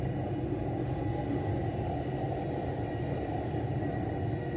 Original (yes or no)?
yes